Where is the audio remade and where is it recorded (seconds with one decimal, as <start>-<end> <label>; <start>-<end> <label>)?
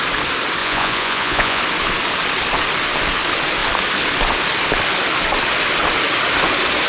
0.0-0.6 recorded; 0.6-1.6 remade; 1.6-6.9 recorded